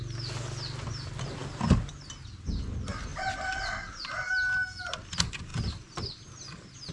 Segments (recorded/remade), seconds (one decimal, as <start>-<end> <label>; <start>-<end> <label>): 0.0-3.1 recorded; 3.1-4.3 remade; 4.3-6.9 recorded